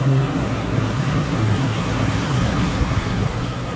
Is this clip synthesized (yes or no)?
yes